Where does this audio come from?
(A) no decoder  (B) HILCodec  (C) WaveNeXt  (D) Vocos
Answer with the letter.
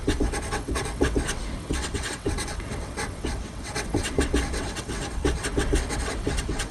C